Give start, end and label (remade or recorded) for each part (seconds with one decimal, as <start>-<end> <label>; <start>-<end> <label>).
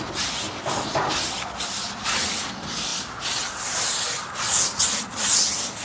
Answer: 0.0-5.8 recorded